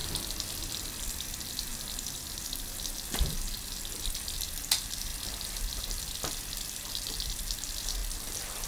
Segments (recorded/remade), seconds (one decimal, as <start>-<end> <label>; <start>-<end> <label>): 0.0-1.0 remade; 1.0-8.0 recorded; 8.0-8.7 remade